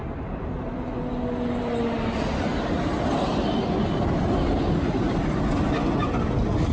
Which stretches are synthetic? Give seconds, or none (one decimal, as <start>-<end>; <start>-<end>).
none